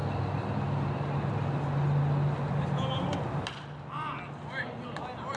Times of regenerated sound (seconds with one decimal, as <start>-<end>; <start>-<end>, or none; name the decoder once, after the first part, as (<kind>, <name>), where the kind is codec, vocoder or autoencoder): none